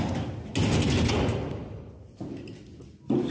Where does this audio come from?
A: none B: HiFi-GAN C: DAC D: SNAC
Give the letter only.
A